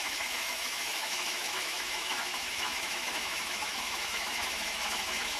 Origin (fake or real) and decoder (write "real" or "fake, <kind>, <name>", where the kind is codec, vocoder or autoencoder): fake, autoencoder, DAC-VAE